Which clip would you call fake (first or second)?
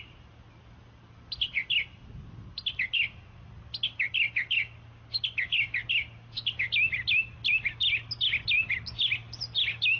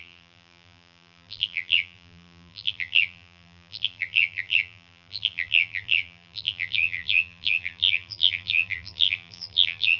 second